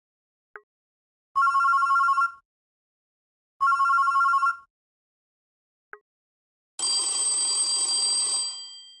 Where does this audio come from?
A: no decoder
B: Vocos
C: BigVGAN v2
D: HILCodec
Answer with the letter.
A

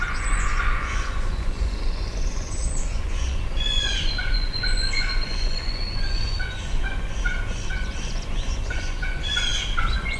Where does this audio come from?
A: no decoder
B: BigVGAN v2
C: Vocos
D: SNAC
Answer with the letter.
C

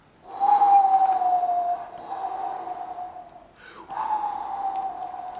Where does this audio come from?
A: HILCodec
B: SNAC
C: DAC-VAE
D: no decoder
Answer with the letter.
D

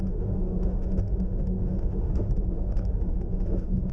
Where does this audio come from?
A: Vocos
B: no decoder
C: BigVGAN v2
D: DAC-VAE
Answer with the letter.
D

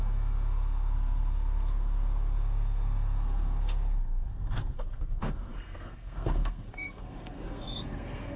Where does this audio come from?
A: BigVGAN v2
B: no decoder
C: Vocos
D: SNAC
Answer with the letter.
D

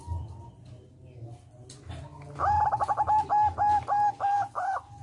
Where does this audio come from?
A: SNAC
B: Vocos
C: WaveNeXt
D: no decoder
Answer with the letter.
D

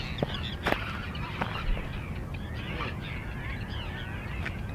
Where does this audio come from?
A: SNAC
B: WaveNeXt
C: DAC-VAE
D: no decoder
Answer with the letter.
D